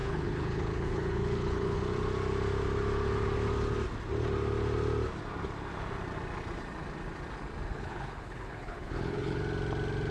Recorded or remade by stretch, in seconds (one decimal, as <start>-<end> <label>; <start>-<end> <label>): 0.0-1.8 remade; 1.8-7.7 recorded; 7.7-9.4 remade; 9.4-10.1 recorded